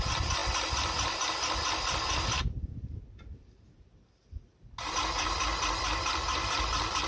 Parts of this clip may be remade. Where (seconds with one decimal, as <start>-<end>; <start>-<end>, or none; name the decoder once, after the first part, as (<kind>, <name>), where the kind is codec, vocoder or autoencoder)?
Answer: none